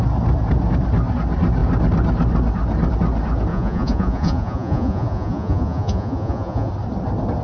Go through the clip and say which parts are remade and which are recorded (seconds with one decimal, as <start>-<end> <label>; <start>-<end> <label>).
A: 0.0-3.5 recorded; 3.5-6.7 remade; 6.7-7.4 recorded